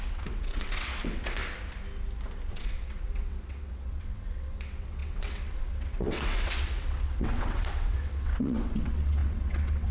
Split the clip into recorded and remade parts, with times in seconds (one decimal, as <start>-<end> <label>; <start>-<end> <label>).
0.0-1.4 remade; 1.4-2.5 recorded; 2.5-9.9 remade